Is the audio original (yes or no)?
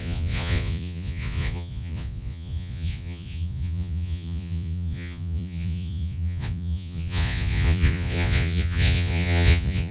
no